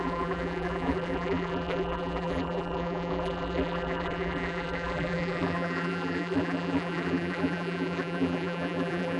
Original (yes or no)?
no